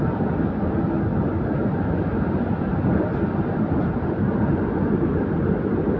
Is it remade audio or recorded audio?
recorded